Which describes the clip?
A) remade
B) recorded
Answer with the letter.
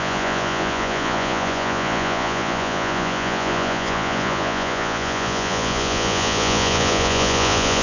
A